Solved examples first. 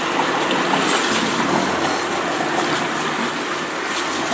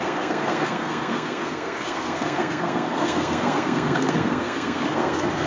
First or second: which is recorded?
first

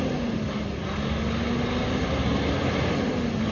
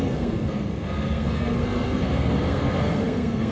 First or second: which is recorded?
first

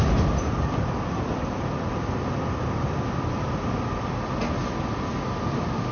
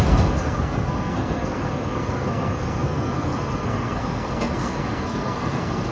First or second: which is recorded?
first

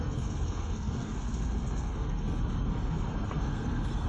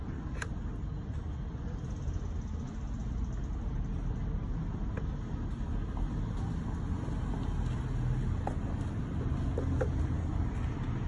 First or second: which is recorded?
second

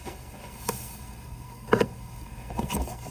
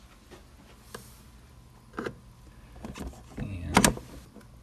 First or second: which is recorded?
second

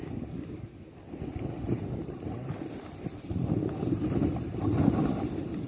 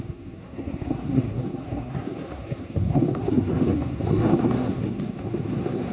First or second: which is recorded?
first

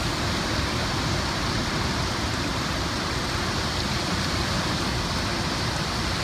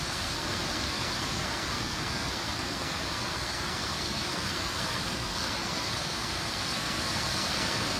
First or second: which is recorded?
first